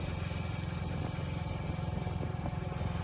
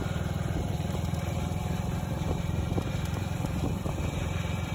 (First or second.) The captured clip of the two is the first